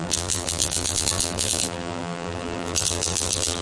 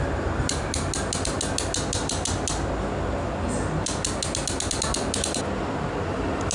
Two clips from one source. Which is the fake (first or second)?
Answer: first